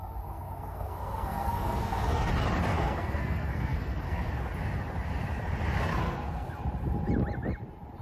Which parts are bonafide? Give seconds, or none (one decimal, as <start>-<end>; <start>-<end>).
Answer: 2.3-2.7; 4.3-5.9; 6.5-8.0

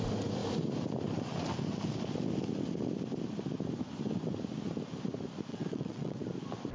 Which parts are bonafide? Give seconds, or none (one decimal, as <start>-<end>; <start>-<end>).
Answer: 0.0-5.5; 6.2-6.7